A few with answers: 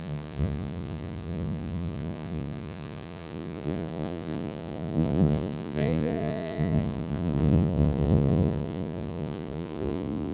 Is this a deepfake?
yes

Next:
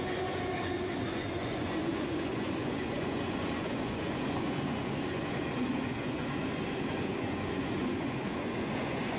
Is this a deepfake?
yes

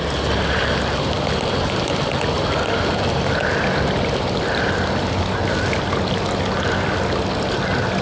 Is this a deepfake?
no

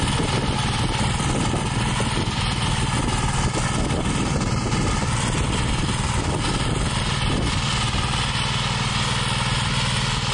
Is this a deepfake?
no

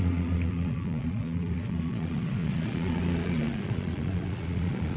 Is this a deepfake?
yes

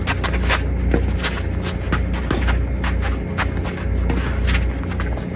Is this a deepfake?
no